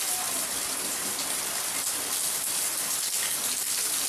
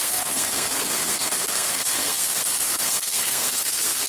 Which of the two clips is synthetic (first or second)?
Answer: second